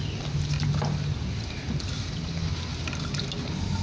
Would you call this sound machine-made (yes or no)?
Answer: no